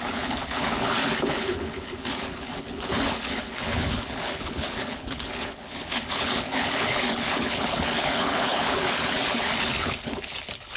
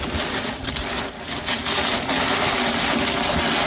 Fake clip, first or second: first